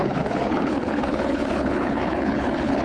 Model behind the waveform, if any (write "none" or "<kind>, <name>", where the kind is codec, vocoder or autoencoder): codec, HILCodec